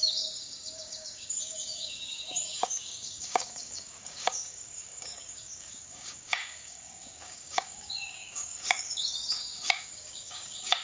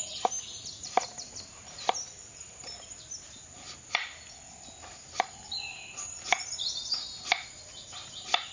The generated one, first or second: first